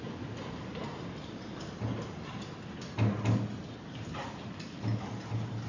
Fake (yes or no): no